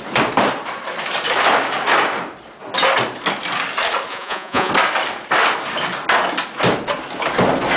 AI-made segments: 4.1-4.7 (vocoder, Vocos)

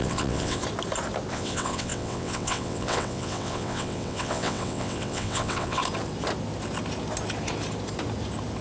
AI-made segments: 0.0-0.6 (vocoder, WaveNeXt); 1.3-5.8